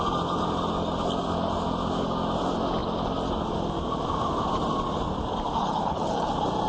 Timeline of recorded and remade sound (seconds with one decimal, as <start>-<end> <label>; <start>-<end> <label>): 0.0-5.6 recorded; 5.6-6.3 remade; 6.3-6.7 recorded

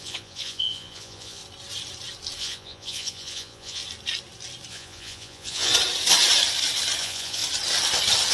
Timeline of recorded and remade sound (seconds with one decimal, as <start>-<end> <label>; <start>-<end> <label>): 0.0-1.4 remade; 1.4-2.4 recorded; 2.4-3.8 remade; 3.8-4.7 recorded; 4.7-5.7 remade; 5.7-7.0 recorded; 7.0-7.4 remade; 7.4-8.3 recorded

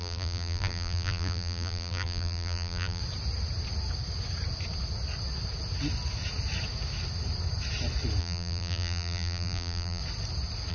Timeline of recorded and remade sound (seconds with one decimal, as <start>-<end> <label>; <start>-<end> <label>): 0.0-3.0 remade; 3.0-8.2 recorded; 8.2-10.0 remade; 10.0-10.7 recorded